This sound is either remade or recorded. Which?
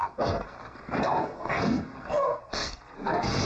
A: remade